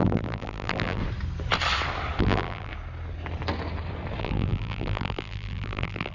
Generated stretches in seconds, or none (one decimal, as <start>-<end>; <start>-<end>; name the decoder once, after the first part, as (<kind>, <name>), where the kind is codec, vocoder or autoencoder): 0.0-1.0 (vocoder, BigVGAN v2); 2.2-2.7; 4.2-6.1